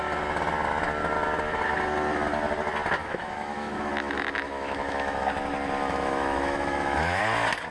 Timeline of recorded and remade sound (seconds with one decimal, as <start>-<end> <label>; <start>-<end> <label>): 0.0-3.0 recorded; 3.0-5.2 remade; 5.2-5.8 recorded; 5.8-7.2 remade; 7.2-7.7 recorded